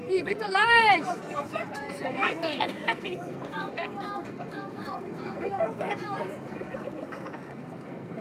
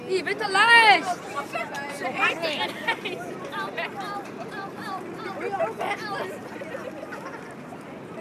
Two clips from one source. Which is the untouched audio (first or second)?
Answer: second